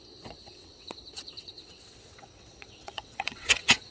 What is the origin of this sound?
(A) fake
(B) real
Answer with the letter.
A